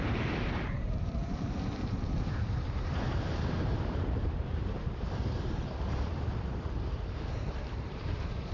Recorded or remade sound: remade